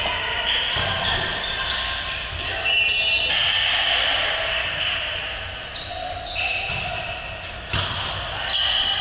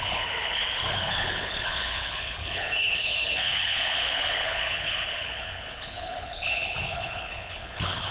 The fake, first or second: second